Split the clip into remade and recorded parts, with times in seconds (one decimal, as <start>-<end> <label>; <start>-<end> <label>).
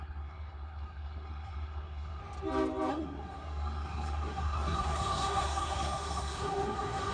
0.0-2.2 remade; 2.2-2.9 recorded; 2.9-7.1 remade